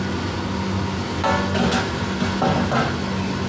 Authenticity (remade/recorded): recorded